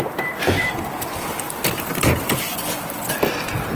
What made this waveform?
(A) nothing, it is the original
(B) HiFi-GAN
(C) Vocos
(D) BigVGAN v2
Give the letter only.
D